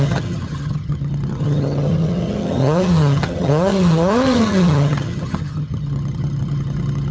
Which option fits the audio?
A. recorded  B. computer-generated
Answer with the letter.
B